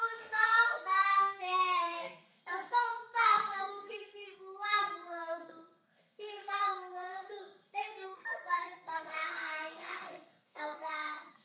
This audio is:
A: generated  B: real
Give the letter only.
A